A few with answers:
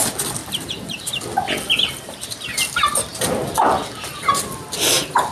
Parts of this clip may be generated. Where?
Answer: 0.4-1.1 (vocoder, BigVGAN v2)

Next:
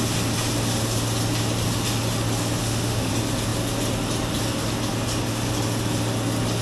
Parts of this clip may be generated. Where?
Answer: 2.6-3.1 (autoencoder, DAC-VAE)

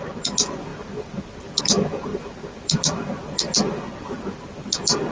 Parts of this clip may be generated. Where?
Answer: none

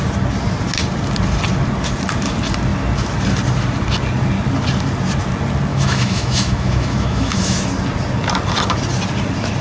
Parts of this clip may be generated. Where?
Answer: 5.7-7.6 (autoencoder, DAC-VAE)